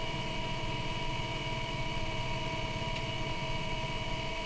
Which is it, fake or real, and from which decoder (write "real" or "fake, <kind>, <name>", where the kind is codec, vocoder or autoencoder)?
fake, vocoder, Vocos